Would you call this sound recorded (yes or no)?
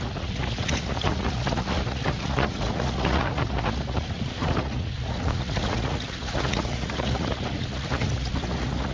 no